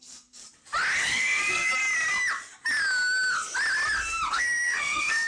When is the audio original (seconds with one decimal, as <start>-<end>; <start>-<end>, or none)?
0.4-1.0; 1.7-4.3